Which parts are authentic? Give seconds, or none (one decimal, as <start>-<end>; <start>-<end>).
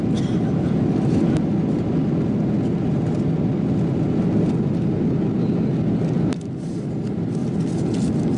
0.0-8.4